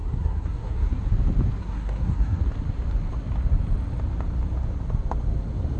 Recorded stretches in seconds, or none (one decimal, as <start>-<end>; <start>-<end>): 1.0-1.6; 2.4-5.8